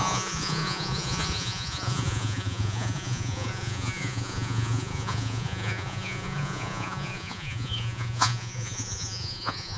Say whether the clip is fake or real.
fake